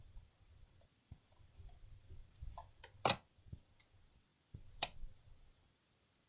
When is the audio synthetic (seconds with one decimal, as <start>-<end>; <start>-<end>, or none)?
0.0-6.3